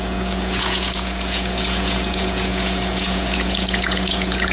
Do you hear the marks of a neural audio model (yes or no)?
yes